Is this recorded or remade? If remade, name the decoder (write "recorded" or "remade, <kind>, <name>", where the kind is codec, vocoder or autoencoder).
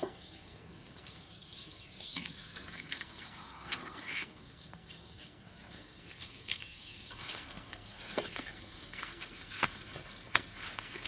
remade, codec, SNAC